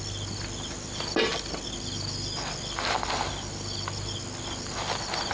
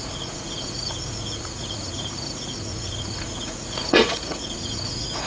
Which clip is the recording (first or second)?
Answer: first